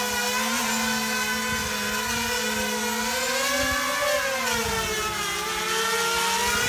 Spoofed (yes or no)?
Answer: no